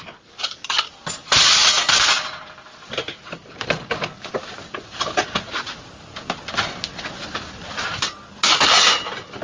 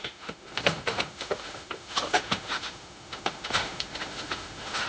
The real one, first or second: first